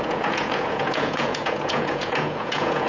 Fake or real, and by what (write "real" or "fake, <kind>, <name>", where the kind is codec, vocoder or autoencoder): fake, vocoder, Vocos